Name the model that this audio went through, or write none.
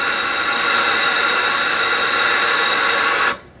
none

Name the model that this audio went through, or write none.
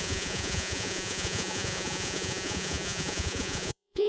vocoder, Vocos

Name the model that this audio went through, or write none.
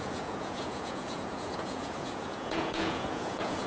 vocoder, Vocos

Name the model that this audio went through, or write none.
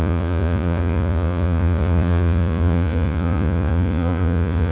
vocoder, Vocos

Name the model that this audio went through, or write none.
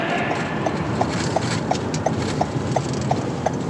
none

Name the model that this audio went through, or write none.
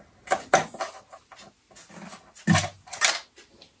none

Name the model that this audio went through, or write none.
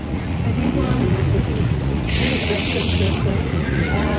vocoder, Vocos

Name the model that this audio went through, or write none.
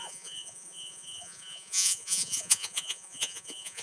vocoder, Vocos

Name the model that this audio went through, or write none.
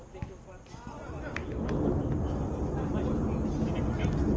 none